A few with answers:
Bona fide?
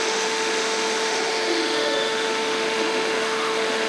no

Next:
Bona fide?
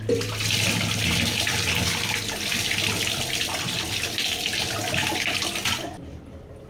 yes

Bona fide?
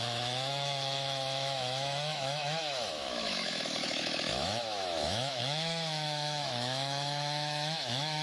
no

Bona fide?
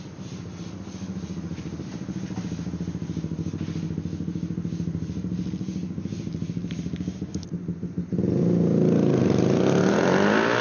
yes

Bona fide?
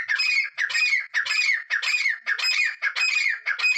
yes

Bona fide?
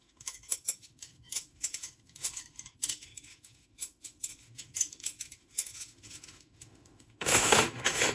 no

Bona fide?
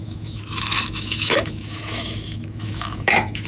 no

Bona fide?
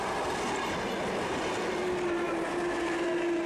yes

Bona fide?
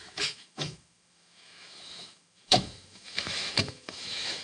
no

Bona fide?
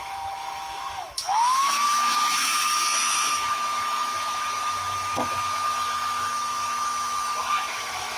no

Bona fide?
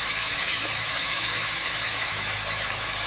no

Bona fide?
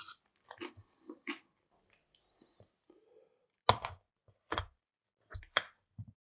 yes